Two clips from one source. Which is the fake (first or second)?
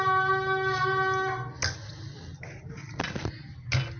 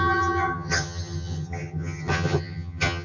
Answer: second